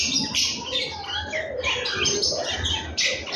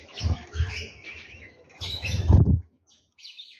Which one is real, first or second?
first